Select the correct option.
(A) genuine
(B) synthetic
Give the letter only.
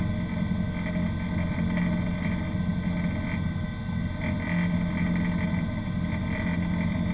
A